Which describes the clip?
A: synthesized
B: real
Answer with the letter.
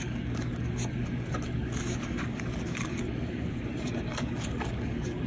A